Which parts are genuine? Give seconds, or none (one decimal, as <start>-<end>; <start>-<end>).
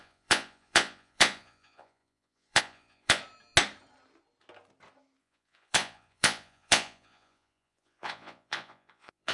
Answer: 3.2-5.2